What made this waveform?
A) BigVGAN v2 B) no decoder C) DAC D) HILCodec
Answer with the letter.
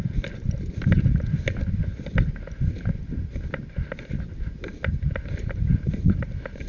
B